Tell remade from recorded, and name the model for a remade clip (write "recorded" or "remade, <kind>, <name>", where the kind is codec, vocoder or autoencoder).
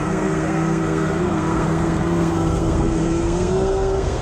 remade, codec, SNAC